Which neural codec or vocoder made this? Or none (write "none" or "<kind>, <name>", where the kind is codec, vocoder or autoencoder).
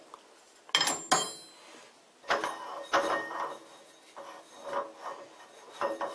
none